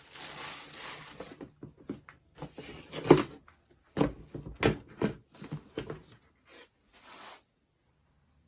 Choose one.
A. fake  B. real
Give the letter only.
B